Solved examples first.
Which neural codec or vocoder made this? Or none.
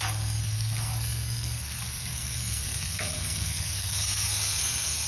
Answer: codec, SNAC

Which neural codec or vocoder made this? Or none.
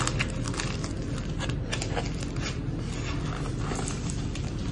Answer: none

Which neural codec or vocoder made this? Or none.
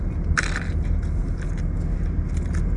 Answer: none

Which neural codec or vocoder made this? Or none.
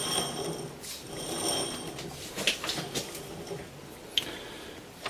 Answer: none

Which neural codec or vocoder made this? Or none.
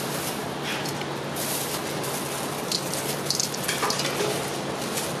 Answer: none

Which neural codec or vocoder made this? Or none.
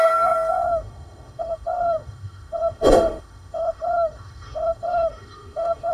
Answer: autoencoder, DAC-VAE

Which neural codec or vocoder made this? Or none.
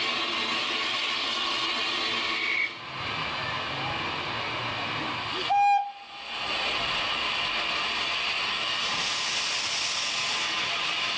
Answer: none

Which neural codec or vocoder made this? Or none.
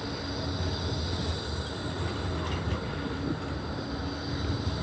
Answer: none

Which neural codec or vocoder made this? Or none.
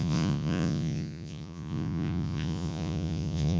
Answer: vocoder, Vocos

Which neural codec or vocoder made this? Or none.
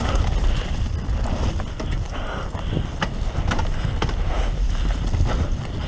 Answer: none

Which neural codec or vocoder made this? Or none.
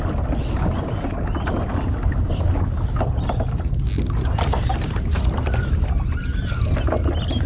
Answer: none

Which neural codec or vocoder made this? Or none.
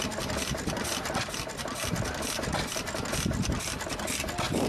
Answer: none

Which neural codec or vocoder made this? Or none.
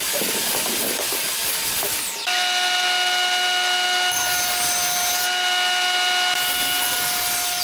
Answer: none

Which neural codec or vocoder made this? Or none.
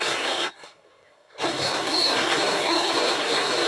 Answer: codec, SNAC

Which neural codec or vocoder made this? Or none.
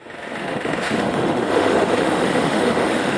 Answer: autoencoder, DAC-VAE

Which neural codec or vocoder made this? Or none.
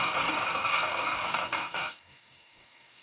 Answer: codec, DAC